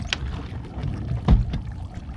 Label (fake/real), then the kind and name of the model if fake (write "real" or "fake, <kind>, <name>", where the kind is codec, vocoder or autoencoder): real